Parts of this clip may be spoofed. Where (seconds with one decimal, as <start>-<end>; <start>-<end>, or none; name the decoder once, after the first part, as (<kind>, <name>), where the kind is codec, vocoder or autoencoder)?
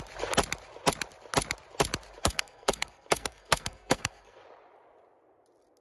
2.2-4.4 (codec, SNAC)